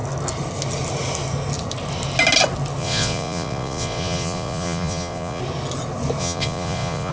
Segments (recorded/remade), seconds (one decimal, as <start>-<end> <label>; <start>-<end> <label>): 0.0-2.8 recorded; 2.8-5.4 remade; 5.4-6.2 recorded; 6.2-7.1 remade